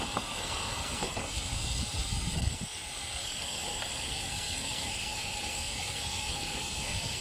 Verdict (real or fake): fake